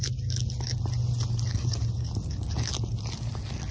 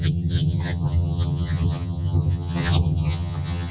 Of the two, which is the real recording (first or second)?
first